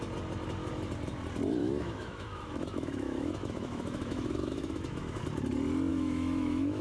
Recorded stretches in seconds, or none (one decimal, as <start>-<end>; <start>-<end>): 0.0-1.6; 5.2-5.9